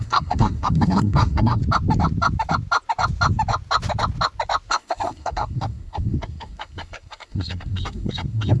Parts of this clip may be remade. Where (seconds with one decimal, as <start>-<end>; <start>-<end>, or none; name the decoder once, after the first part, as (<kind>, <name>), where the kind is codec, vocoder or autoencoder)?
0.0-1.6 (codec, SNAC); 4.7-8.6